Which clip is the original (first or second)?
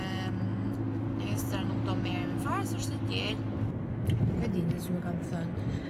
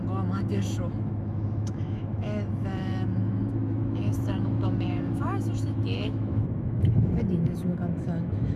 first